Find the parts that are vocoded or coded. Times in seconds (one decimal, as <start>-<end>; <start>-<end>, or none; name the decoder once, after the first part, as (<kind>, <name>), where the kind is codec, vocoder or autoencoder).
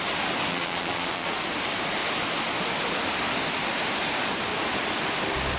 0.5-1.3 (vocoder, Vocos)